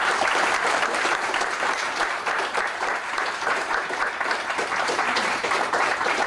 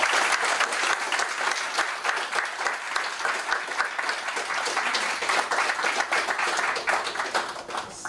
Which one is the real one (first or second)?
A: second